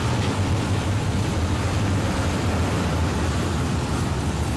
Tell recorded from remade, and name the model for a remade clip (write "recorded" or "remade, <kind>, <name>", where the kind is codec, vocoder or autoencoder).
recorded